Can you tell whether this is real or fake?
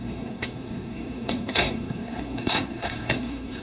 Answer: fake